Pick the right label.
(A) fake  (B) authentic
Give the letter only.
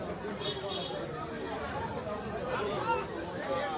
B